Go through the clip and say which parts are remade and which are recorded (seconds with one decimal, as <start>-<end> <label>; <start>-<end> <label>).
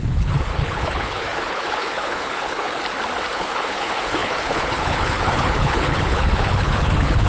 0.0-2.8 remade; 2.8-3.3 recorded; 3.3-7.3 remade